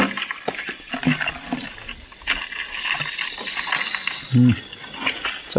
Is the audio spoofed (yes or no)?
no